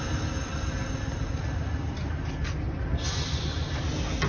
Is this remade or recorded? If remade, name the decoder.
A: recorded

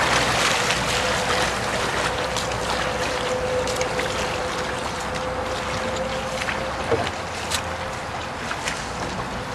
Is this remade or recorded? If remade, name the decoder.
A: recorded